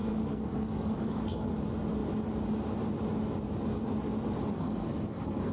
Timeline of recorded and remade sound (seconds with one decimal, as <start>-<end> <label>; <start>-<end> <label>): 0.0-1.5 remade; 1.5-4.5 recorded; 4.5-5.5 remade